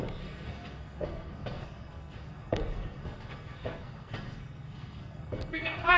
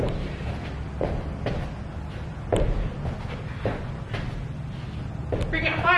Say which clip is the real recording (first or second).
second